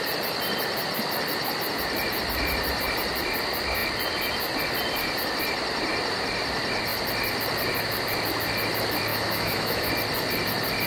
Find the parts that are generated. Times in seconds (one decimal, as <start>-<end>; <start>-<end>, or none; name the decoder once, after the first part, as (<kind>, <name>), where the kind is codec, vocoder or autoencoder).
9.1-9.9 (autoencoder, DAC-VAE)